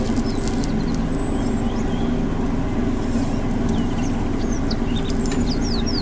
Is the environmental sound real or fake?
real